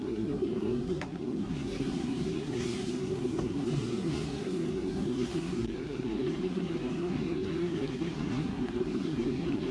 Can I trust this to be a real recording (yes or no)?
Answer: no